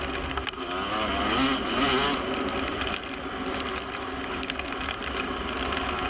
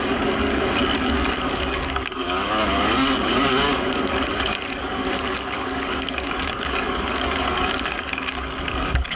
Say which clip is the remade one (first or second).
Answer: second